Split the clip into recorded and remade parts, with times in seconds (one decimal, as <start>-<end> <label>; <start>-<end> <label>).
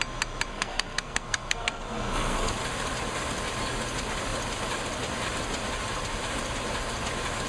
0.0-0.5 recorded; 0.5-2.5 remade; 2.5-7.5 recorded